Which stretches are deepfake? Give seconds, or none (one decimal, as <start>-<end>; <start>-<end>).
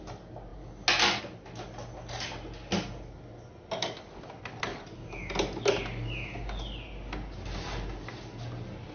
none